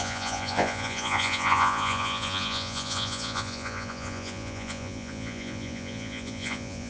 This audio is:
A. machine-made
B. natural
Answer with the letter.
A